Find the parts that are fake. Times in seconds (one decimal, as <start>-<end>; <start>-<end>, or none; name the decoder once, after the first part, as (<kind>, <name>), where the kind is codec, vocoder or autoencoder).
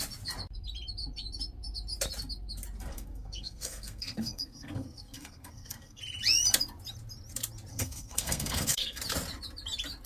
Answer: 2.9-6.0 (codec, SNAC); 7.7-9.0